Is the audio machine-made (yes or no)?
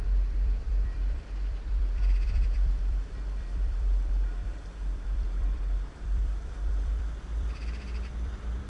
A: yes